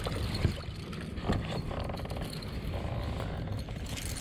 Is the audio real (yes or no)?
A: yes